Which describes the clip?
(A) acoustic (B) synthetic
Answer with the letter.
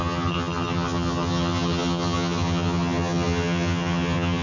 B